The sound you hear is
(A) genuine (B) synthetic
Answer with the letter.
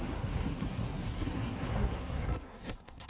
B